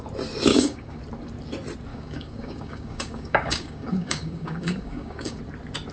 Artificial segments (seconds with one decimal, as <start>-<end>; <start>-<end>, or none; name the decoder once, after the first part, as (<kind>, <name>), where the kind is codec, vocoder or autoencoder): 0.5-1.0 (codec, DAC); 1.9-5.4